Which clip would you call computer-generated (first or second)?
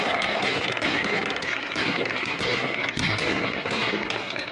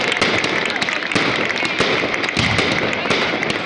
first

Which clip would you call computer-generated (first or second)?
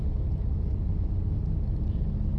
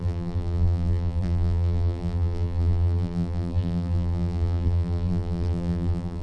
second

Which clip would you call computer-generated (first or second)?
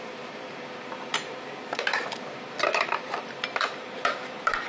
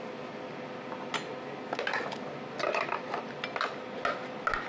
first